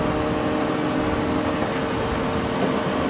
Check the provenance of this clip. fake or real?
real